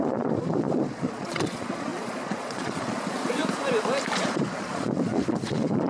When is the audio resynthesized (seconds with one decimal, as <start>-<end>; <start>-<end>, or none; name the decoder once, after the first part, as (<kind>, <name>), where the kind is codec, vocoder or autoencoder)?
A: 0.0-3.4 (vocoder, Vocos); 4.2-5.9